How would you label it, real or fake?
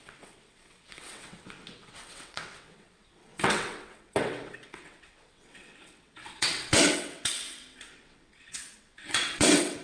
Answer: fake